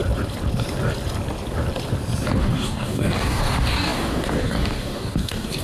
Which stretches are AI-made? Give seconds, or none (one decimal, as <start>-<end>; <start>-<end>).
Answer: 2.4-5.6